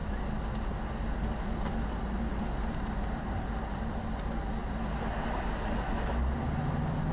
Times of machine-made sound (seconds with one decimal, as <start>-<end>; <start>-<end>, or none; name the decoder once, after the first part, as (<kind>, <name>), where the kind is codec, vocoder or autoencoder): none